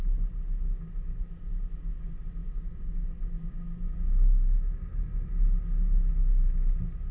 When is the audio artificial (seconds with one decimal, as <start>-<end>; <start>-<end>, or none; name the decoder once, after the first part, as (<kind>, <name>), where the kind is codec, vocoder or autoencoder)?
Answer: none